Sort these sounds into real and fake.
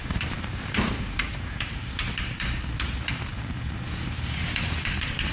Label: fake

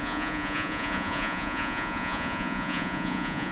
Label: fake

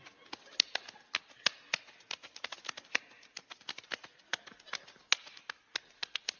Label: real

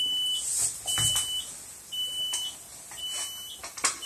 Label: real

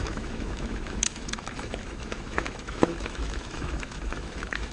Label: fake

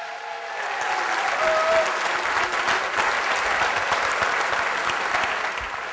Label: real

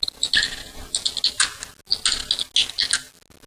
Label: real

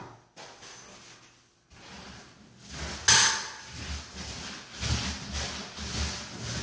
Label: real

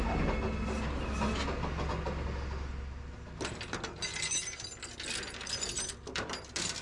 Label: real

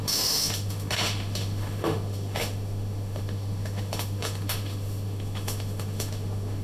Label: fake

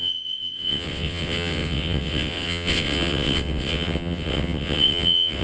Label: fake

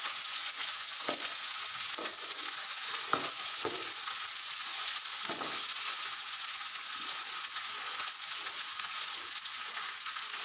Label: fake